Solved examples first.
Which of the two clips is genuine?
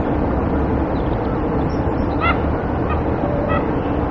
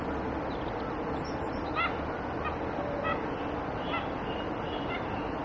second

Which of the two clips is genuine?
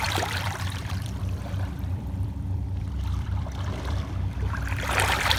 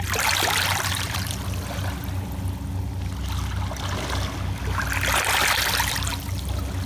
second